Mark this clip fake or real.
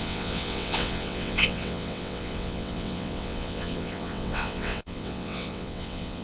fake